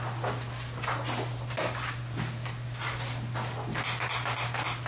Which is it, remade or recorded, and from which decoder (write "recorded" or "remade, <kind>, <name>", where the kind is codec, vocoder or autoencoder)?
recorded